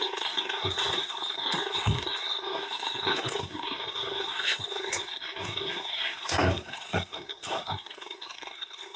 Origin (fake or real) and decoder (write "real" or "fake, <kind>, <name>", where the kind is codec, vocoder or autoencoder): fake, codec, SNAC